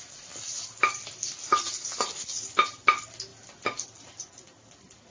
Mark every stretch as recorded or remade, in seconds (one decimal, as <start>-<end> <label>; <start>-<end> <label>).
0.0-5.1 recorded